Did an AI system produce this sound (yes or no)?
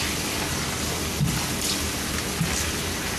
no